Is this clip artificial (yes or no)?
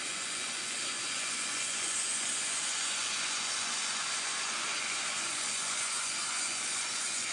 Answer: yes